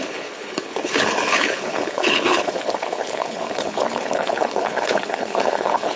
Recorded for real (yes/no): no